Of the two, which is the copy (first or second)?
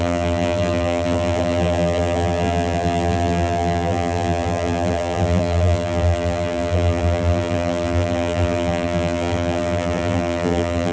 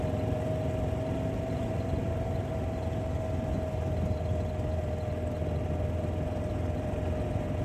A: first